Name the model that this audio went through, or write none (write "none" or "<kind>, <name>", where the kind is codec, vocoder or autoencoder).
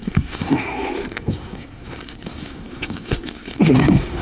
codec, SNAC